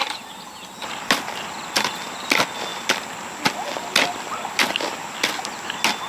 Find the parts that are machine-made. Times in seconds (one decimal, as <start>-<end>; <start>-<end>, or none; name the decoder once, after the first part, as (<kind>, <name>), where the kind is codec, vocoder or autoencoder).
none